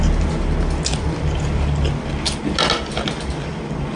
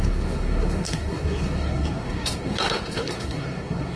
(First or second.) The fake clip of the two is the second